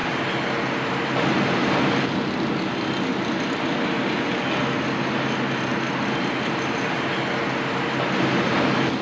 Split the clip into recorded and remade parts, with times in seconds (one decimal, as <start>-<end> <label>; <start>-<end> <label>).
0.0-9.0 recorded